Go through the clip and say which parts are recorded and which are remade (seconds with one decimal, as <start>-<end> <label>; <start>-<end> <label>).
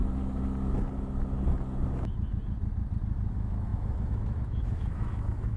0.0-3.3 recorded; 3.3-5.6 remade